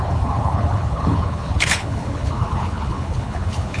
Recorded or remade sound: remade